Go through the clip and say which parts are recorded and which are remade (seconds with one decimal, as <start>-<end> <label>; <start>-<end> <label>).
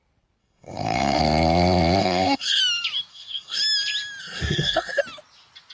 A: 0.0-0.4 recorded; 0.4-1.2 remade; 1.2-2.0 recorded; 2.0-2.6 remade; 2.6-3.1 recorded; 3.1-3.6 remade; 3.6-4.2 recorded; 4.2-5.0 remade; 5.0-5.7 recorded